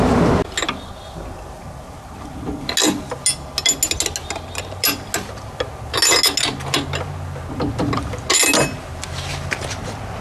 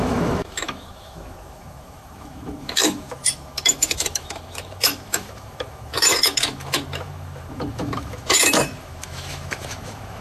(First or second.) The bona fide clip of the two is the first